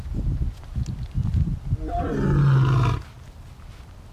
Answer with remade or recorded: recorded